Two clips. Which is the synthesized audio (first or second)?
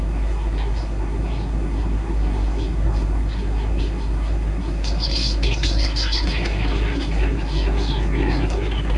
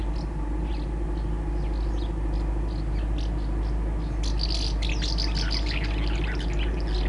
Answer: first